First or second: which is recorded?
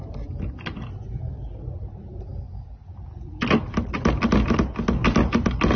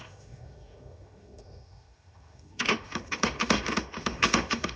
first